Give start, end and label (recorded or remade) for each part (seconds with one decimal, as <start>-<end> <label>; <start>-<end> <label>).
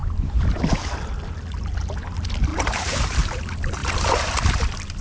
0.0-0.6 remade; 0.6-2.5 recorded; 2.5-3.4 remade; 3.4-5.0 recorded